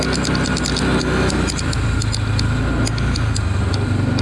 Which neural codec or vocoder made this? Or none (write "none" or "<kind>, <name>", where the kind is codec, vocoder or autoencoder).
none